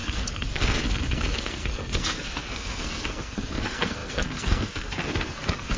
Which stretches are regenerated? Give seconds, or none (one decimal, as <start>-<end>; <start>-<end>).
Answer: 0.0-5.8